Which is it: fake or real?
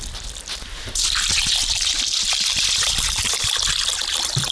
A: real